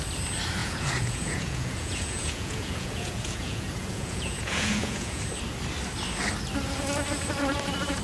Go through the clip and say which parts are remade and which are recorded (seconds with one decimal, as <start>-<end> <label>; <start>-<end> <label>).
0.0-0.6 recorded; 0.6-5.2 remade; 5.2-8.0 recorded